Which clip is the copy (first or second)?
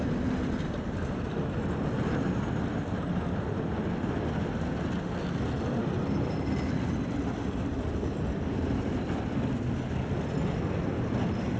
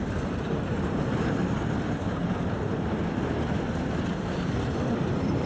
second